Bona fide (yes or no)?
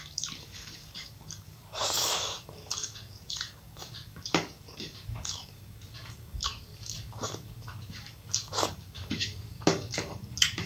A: no